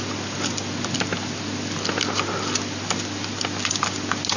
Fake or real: real